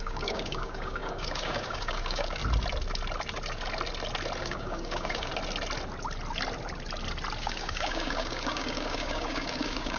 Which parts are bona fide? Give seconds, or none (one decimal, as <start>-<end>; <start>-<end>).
2.4-4.4; 5.3-7.4